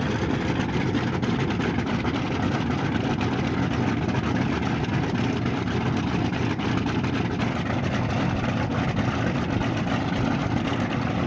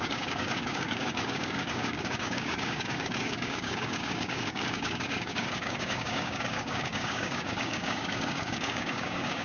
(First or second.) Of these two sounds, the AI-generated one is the second